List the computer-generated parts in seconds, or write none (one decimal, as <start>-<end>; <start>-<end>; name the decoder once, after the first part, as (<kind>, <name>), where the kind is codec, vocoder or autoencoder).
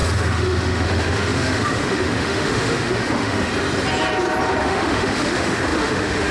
0.0-3.5 (autoencoder, DAC-VAE); 4.6-6.3